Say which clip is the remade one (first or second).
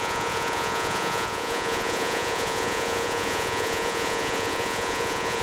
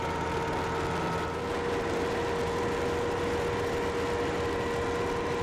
first